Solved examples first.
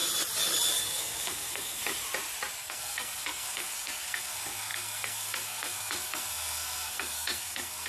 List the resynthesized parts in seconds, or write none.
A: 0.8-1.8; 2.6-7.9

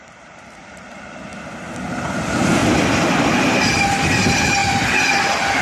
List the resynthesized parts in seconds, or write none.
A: 0.0-1.3; 2.2-2.6; 3.4-4.6